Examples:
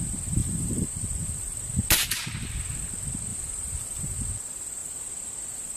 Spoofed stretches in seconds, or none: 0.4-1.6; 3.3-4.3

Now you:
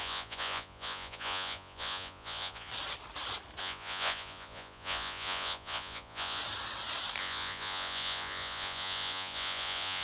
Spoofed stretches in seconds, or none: 0.0-2.7; 3.6-6.4; 7.2-10.0

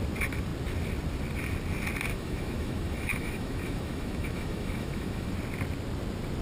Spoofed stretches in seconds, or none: 2.1-5.3

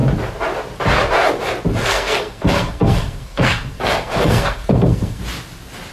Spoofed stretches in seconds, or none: 1.8-5.2

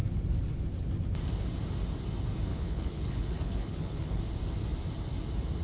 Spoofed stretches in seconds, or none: 2.5-4.2

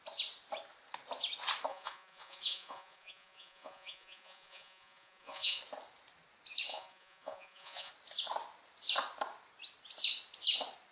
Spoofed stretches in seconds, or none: 1.7-5.6; 6.7-7.9